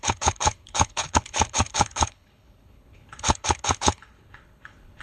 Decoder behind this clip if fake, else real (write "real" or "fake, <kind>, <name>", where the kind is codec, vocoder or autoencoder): fake, codec, HILCodec